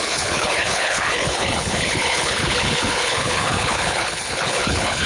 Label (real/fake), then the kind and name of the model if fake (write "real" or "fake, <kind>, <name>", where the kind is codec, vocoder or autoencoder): fake, codec, HILCodec